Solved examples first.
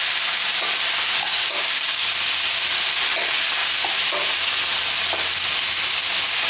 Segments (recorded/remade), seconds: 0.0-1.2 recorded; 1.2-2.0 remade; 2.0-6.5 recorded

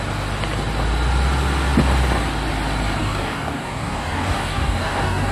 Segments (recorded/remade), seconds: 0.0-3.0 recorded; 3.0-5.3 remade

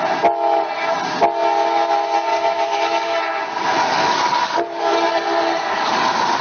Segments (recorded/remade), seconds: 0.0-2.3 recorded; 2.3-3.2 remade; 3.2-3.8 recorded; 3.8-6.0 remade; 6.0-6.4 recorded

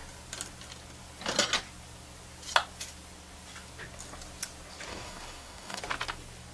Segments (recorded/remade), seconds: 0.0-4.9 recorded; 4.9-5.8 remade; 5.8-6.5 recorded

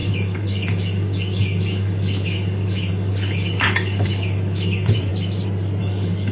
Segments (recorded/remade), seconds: 0.0-5.1 remade; 5.1-5.8 recorded; 5.8-6.3 remade